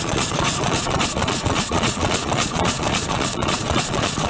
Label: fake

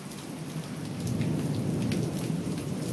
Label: fake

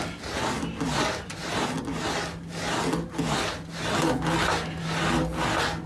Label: real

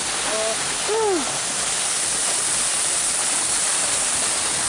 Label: real